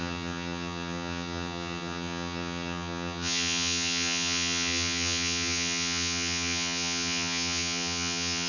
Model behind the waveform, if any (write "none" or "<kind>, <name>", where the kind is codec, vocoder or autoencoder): vocoder, HiFi-GAN